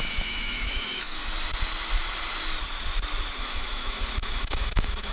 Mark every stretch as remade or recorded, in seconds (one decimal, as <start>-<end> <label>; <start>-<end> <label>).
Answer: 0.0-1.2 remade; 1.2-3.4 recorded; 3.4-5.1 remade